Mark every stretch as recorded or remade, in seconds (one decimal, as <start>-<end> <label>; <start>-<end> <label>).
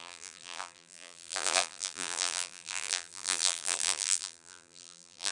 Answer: 0.0-5.3 remade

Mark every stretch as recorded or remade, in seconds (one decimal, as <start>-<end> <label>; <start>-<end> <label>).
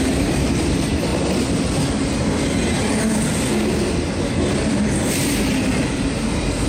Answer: 0.0-1.1 remade; 1.1-5.1 recorded; 5.1-6.7 remade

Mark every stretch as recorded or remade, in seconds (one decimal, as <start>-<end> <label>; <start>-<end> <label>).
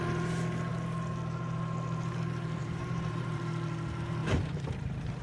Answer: 0.0-2.6 recorded; 2.6-3.4 remade; 3.4-4.2 recorded; 4.2-5.2 remade